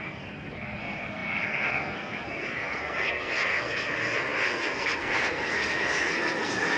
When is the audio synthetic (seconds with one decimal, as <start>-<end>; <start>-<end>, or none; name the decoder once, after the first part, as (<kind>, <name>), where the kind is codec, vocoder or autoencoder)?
0.0-6.8 (codec, SNAC)